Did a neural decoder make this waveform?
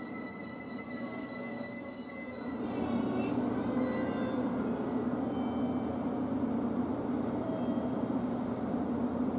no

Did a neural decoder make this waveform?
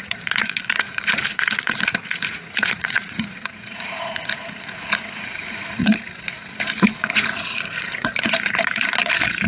yes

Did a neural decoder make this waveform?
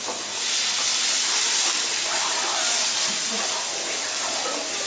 no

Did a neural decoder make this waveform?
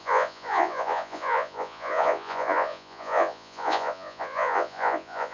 yes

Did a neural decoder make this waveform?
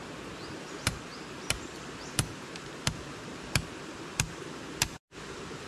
no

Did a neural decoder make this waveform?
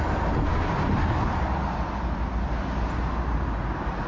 no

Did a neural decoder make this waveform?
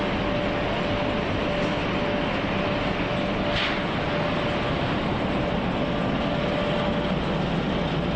no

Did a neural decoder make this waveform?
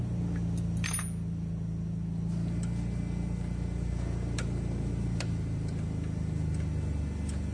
no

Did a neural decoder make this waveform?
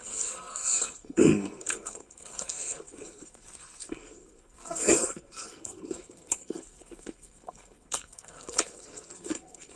yes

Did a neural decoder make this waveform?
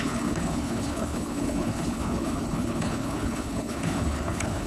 yes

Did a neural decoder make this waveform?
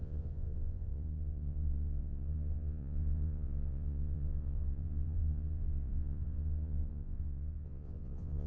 yes